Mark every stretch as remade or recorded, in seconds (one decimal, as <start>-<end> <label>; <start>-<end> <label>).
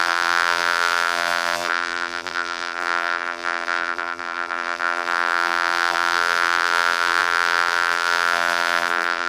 0.0-9.3 remade